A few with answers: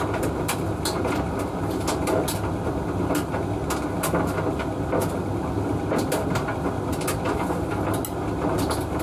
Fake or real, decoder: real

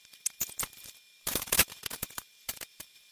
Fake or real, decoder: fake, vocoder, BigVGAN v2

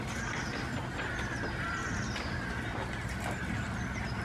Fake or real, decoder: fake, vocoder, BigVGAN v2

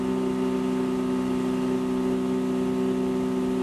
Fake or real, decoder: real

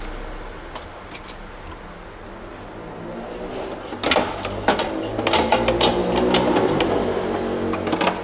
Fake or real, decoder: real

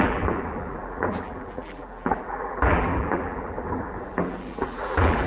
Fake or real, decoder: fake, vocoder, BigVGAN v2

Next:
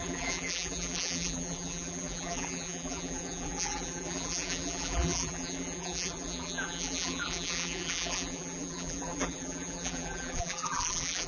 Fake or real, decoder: fake, vocoder, BigVGAN v2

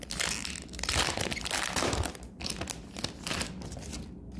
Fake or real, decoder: real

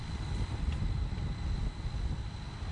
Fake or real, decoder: real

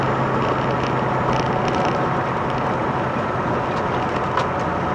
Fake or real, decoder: real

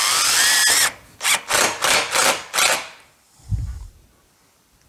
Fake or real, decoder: fake, vocoder, BigVGAN v2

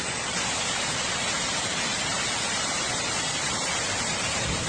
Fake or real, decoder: fake, vocoder, BigVGAN v2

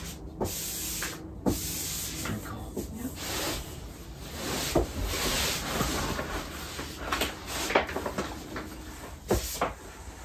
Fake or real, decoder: real